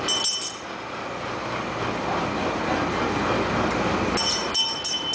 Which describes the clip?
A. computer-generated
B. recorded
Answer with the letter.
B